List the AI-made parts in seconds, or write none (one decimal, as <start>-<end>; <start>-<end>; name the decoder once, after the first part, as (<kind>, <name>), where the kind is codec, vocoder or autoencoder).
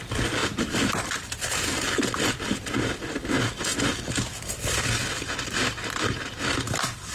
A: none